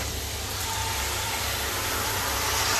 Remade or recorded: recorded